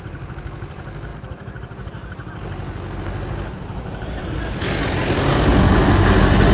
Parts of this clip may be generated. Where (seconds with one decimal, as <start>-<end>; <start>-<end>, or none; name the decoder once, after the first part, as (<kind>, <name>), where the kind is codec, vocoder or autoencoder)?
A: none